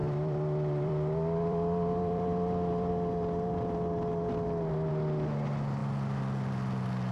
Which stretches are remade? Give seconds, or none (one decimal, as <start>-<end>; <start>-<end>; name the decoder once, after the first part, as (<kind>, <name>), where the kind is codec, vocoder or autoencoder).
0.0-2.9 (vocoder, BigVGAN v2)